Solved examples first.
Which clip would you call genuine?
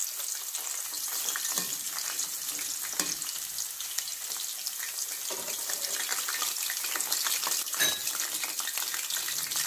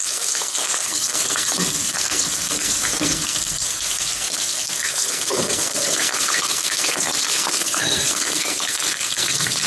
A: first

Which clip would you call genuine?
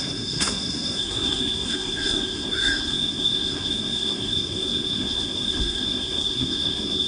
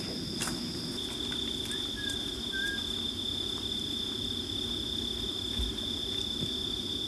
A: second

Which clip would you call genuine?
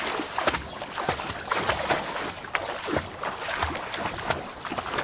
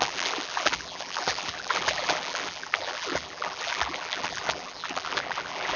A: first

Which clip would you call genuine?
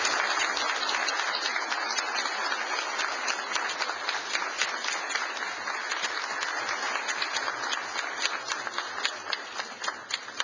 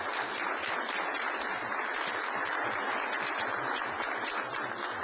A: first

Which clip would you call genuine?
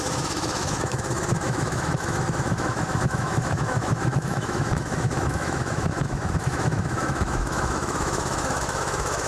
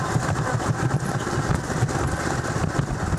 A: second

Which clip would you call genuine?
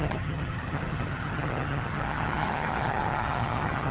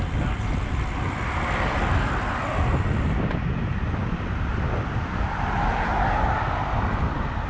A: second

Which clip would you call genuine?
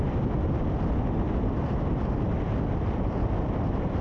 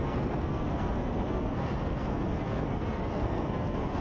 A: first